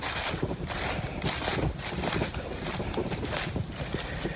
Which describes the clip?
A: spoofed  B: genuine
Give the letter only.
B